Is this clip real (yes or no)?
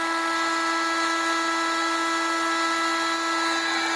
yes